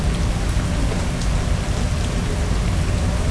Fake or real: real